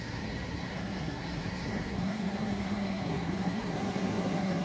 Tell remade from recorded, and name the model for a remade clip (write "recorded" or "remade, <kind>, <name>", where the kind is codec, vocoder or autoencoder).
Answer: remade, codec, SNAC